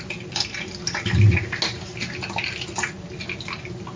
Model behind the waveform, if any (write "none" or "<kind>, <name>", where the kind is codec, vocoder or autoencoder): none